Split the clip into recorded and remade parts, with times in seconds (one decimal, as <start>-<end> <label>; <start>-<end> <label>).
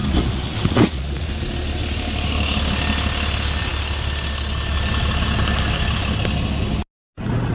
0.0-1.3 remade; 1.3-7.5 recorded